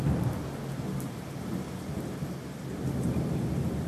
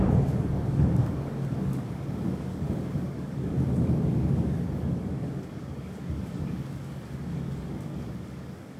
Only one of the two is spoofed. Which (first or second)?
second